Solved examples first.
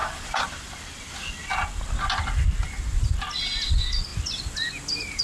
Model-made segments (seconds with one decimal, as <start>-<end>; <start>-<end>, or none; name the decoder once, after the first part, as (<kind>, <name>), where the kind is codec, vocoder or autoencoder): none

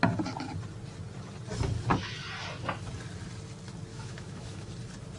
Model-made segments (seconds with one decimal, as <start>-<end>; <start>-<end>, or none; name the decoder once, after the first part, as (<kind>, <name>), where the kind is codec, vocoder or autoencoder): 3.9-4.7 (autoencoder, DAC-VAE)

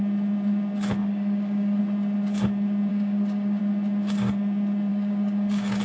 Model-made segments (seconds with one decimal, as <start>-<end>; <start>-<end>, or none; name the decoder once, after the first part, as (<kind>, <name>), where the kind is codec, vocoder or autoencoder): 1.0-1.8 (codec, DAC); 2.9-3.6; 4.9-5.8

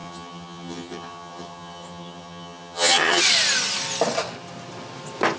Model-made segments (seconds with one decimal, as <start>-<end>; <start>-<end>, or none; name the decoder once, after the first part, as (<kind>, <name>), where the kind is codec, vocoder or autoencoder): 0.0-3.2 (vocoder, HiFi-GAN)

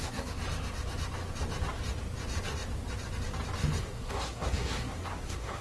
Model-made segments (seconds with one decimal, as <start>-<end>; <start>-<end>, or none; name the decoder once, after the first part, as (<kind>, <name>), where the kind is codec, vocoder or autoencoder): 0.0-0.4 (codec, SNAC); 3.8-5.6

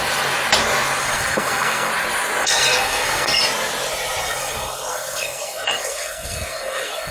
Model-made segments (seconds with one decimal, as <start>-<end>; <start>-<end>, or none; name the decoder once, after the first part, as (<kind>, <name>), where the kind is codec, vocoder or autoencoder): 1.0-1.9 (codec, SNAC); 2.4-3.4; 4.2-7.1

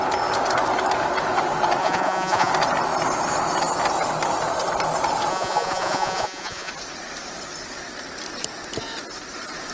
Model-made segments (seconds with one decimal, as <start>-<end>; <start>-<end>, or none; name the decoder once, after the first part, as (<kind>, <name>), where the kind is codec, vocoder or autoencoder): 1.8-2.5 (vocoder, Vocos); 5.3-6.7

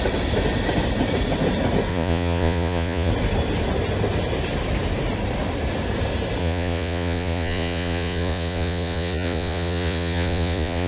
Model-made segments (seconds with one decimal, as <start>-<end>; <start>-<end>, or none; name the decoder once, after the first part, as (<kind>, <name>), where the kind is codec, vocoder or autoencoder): 1.9-3.1 (vocoder, Vocos); 6.4-10.9